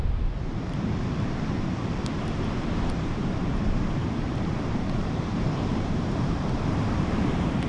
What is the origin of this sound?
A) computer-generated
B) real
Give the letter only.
A